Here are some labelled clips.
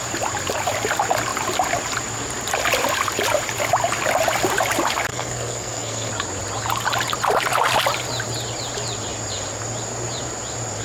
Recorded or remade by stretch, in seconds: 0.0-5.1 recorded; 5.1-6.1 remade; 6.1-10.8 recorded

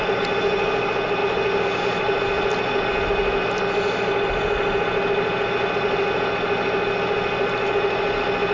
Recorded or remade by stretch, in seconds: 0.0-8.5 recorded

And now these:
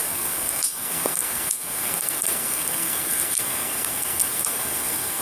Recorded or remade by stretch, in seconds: 0.0-5.2 remade